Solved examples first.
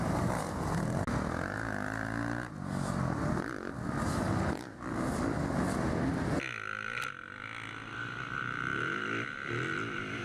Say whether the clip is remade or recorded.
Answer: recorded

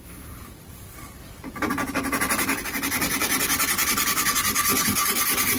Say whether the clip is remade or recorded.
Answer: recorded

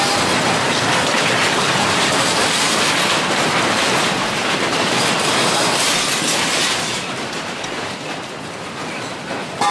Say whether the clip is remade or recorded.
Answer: remade